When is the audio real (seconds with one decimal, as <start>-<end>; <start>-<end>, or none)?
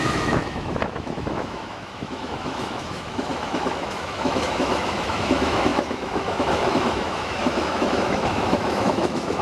none